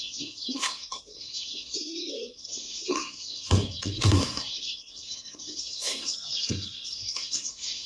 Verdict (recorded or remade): remade